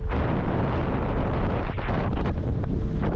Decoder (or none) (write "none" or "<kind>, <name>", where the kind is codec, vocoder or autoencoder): none